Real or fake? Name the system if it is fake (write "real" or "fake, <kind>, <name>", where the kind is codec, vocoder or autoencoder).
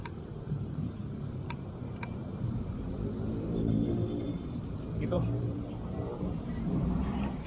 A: fake, vocoder, BigVGAN v2